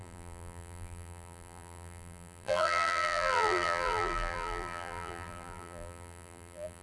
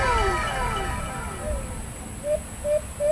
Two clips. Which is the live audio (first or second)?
second